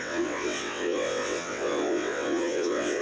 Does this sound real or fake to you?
fake